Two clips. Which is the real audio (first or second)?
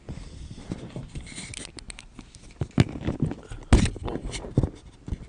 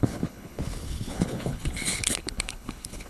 first